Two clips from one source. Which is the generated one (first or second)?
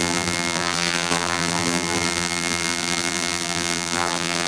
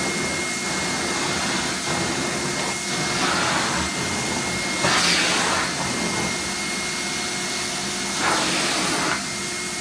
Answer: first